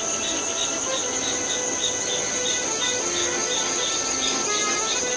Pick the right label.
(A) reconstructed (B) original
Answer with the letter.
B